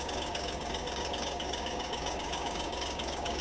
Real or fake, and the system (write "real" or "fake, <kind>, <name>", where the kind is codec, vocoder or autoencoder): fake, codec, DAC